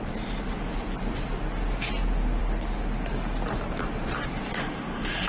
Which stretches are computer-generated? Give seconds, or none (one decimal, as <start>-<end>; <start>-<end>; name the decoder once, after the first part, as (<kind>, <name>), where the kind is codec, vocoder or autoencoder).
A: 4.6-5.3 (autoencoder, DAC-VAE)